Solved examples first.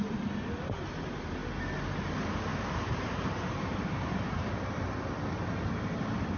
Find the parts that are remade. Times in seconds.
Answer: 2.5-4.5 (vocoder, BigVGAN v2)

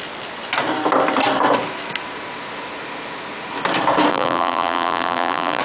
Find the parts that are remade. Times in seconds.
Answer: 4.1-5.6 (vocoder, BigVGAN v2)

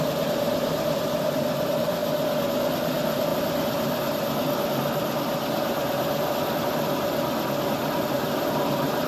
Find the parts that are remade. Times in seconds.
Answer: 0.0-2.0 (vocoder, BigVGAN v2); 2.6-3.3; 7.6-9.1

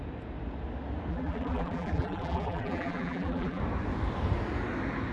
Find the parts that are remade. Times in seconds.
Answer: 1.1-3.6 (vocoder, BigVGAN v2)

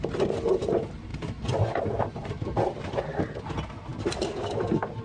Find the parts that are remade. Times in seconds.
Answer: 1.1-3.2 (vocoder, BigVGAN v2)

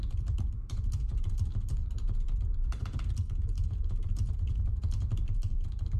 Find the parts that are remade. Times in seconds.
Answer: 1.1-2.8 (vocoder, BigVGAN v2); 3.4-6.0